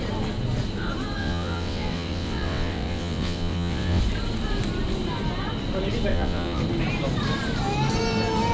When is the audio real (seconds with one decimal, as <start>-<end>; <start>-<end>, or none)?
0.0-1.2; 4.0-6.1; 6.6-8.5